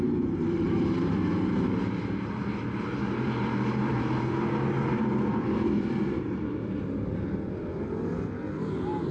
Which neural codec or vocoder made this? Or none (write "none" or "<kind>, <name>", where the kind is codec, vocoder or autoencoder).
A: vocoder, BigVGAN v2